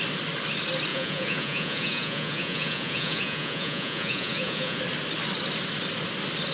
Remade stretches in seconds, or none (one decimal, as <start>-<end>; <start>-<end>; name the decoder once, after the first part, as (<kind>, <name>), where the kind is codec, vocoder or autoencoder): 0.9-4.8 (vocoder, Vocos)